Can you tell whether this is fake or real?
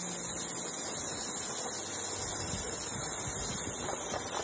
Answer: real